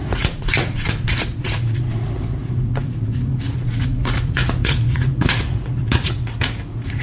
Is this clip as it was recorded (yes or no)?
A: no